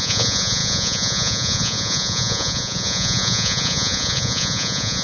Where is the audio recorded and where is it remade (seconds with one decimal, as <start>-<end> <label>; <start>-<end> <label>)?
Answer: 0.0-5.0 remade